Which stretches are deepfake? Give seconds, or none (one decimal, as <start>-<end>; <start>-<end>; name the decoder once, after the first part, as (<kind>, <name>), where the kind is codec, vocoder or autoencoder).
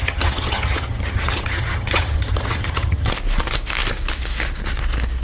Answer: 0.0-3.1 (vocoder, HiFi-GAN)